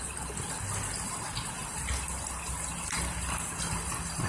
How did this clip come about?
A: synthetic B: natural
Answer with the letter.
B